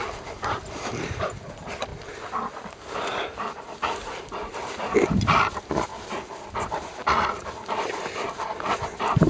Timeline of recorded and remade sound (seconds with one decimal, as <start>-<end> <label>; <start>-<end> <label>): 0.0-1.9 remade; 1.9-3.1 recorded; 3.1-5.9 remade; 5.9-6.5 recorded; 6.5-9.3 remade